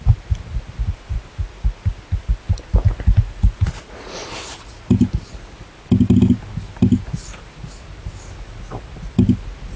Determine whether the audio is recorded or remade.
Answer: recorded